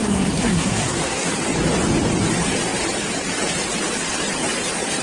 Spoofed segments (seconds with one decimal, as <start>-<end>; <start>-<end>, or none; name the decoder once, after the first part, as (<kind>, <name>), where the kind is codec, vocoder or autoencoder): 0.0-1.3 (codec, SNAC)